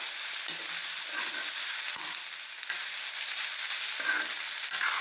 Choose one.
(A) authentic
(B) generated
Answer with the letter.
A